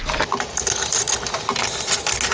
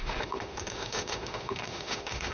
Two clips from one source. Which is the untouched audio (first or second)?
first